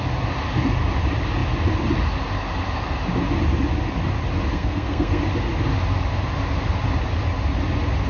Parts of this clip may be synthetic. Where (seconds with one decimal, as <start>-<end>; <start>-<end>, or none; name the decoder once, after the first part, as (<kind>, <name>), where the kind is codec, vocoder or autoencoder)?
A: 4.5-5.2 (codec, SNAC)